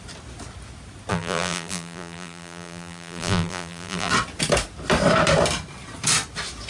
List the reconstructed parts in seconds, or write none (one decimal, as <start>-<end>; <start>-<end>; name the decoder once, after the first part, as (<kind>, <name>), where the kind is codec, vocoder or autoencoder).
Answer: 1.1-4.1 (vocoder, BigVGAN v2)